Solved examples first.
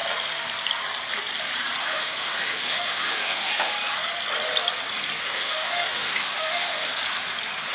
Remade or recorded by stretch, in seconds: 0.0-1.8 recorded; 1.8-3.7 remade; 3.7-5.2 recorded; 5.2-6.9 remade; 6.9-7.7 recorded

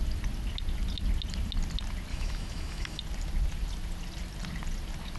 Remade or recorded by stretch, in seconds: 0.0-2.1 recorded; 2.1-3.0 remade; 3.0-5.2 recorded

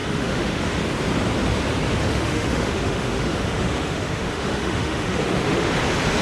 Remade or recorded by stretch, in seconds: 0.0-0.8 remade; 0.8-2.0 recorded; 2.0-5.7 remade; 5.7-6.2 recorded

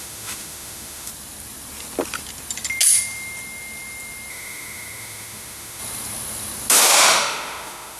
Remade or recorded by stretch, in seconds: 0.0-1.1 remade; 1.1-4.3 recorded; 4.3-5.8 remade; 5.8-6.7 recorded; 6.7-8.0 remade